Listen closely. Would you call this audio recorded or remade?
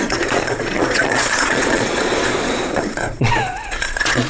remade